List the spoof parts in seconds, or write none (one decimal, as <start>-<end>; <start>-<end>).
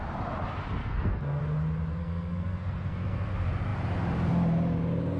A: 0.8-1.4; 2.0-3.3